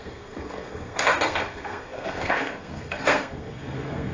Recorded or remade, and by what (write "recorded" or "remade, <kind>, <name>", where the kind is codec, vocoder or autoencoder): remade, codec, SNAC